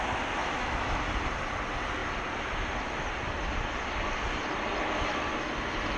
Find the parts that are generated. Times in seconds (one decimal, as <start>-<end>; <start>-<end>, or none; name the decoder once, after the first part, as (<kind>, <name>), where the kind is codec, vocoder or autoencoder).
0.4-1.0 (autoencoder, DAC-VAE)